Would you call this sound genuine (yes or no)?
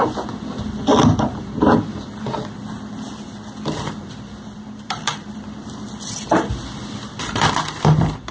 no